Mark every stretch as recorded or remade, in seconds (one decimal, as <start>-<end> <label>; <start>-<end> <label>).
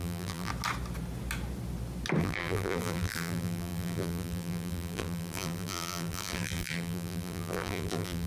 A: 0.0-0.5 remade; 0.5-2.2 recorded; 2.2-8.3 remade